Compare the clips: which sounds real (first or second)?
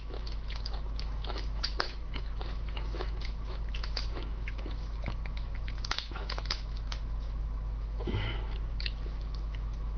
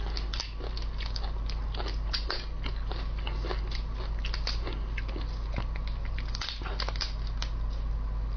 second